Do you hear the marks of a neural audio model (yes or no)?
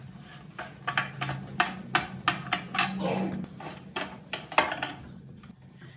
no